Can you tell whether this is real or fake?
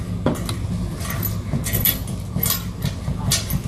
real